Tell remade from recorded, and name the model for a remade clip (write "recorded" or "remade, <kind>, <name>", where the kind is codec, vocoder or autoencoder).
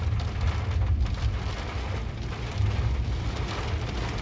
recorded